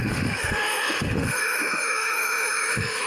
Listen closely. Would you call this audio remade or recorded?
remade